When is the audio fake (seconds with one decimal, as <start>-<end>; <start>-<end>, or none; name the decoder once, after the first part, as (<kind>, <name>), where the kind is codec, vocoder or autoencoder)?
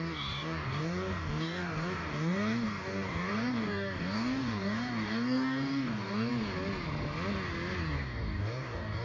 0.0-6.3 (codec, DAC); 7.8-9.0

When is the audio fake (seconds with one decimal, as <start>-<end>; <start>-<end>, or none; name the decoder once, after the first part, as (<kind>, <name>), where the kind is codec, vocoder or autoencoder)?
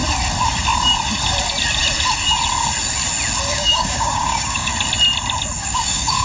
3.5-4.7 (codec, DAC); 5.6-6.2